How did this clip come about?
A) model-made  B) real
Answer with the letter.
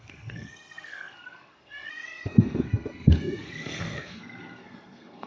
A